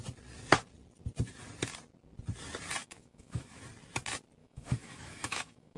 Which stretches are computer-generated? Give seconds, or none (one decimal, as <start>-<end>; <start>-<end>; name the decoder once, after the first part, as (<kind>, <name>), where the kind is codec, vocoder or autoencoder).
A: 2.8-3.6 (autoencoder, DAC-VAE); 4.4-5.8